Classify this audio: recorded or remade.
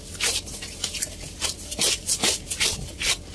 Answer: recorded